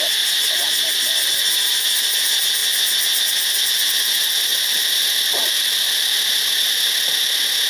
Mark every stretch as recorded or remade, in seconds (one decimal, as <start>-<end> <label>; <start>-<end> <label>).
0.0-7.7 recorded